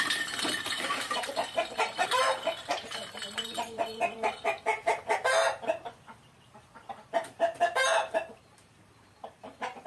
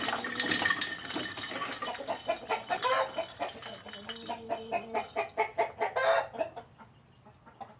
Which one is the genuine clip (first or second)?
second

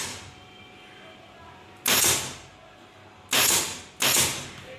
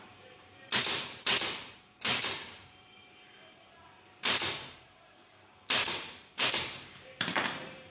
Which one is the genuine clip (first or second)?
first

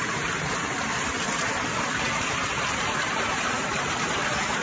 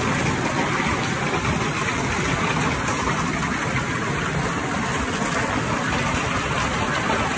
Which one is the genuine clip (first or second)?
second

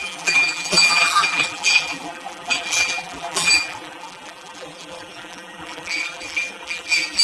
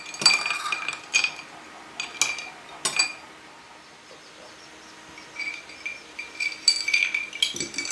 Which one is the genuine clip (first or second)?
second